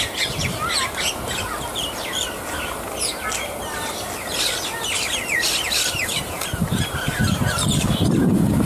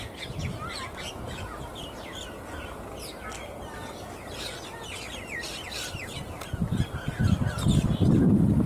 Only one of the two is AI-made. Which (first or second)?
first